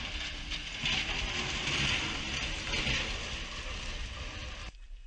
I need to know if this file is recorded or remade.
recorded